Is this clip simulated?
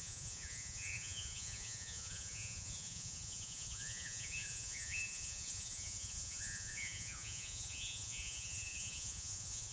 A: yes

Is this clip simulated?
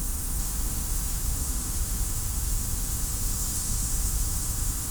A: yes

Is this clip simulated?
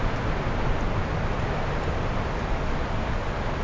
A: no